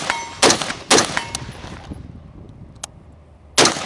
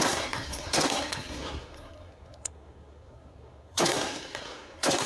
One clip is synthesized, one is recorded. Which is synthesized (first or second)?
second